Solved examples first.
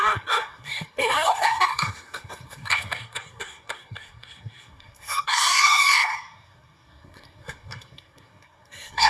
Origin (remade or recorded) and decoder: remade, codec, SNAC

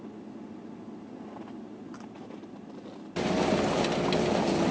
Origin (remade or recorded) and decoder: recorded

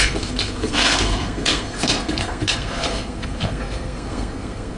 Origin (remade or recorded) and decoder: remade, codec, SNAC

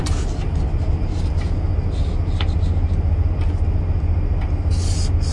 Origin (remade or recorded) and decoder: recorded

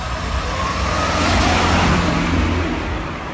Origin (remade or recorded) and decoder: recorded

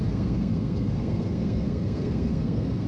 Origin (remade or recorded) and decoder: remade, codec, SNAC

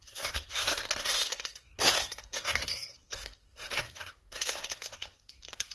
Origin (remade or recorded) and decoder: remade, codec, SNAC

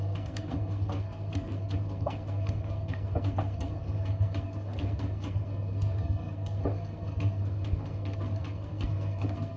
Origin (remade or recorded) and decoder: remade, codec, SNAC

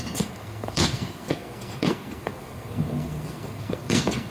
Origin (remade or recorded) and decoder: remade, codec, SNAC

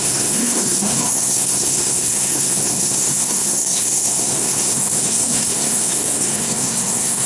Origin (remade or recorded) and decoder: remade, codec, SNAC